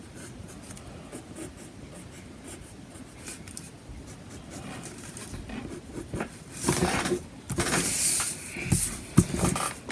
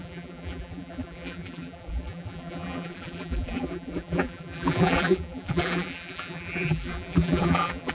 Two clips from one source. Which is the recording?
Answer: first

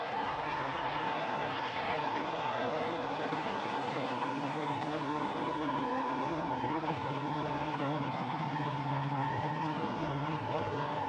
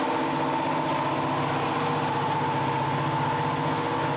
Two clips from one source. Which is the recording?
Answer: second